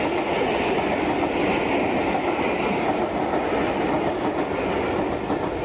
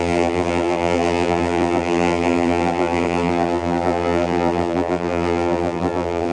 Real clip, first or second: first